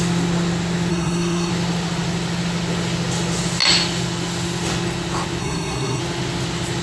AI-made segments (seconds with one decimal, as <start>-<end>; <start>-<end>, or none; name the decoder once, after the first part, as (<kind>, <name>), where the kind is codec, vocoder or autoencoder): 0.9-1.5 (codec, SNAC); 5.4-6.0